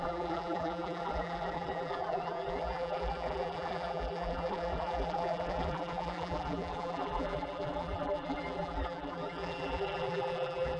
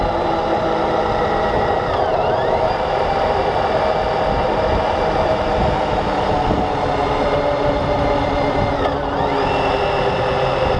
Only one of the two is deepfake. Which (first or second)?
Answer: first